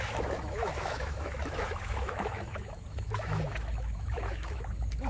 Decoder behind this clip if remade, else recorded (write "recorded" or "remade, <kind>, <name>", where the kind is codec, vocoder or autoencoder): remade, autoencoder, DAC-VAE